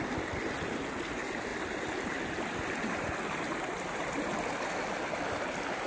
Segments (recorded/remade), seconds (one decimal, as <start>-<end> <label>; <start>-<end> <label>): 0.0-5.9 recorded